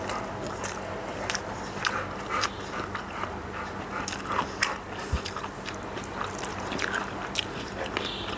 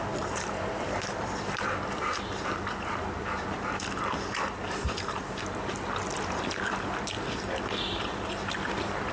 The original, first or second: first